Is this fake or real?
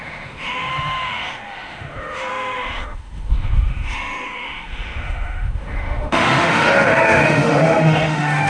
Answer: fake